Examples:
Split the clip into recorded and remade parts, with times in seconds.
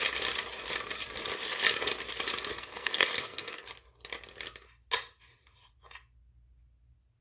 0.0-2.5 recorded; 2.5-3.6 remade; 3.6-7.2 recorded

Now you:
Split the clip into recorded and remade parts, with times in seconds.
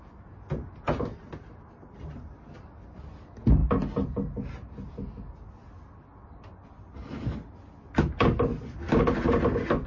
0.0-1.1 recorded; 1.1-2.3 remade; 2.3-8.5 recorded; 8.5-9.0 remade; 9.0-9.9 recorded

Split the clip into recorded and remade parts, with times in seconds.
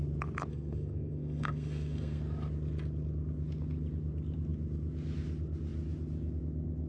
0.0-0.5 recorded; 0.5-2.2 remade; 2.2-6.9 recorded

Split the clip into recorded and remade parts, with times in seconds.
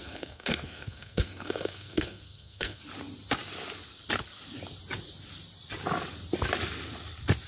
0.0-2.8 remade; 2.8-7.5 recorded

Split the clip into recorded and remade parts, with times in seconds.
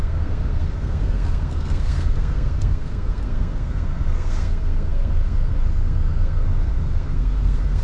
0.0-7.8 remade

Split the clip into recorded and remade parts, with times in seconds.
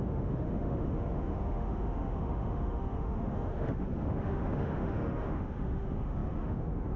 0.0-7.0 remade